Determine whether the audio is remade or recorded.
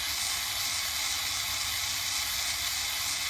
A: recorded